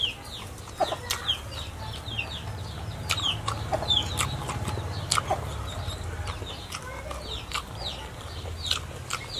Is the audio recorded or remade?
recorded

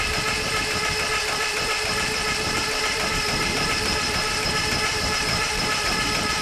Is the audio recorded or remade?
remade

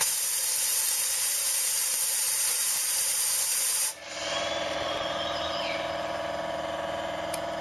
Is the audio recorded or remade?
remade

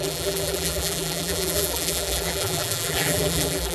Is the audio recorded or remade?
remade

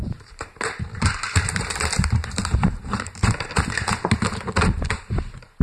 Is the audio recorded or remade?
remade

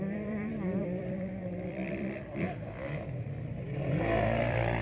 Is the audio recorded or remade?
remade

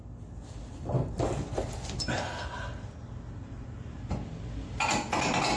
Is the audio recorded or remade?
recorded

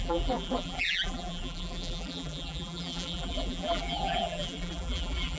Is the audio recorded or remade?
remade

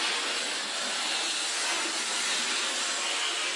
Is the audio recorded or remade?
recorded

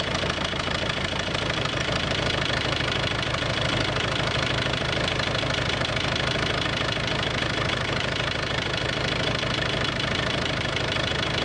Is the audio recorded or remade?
remade